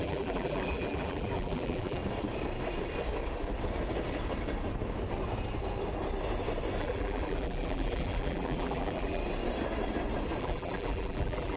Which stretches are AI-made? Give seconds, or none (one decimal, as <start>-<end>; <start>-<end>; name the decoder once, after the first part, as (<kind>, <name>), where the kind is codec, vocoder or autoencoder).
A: 0.0-2.0 (vocoder, BigVGAN v2); 6.8-9.2; 10.4-11.6